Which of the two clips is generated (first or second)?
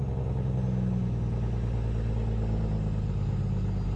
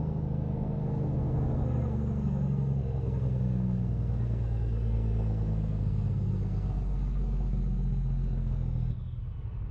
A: second